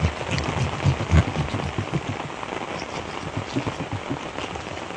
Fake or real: real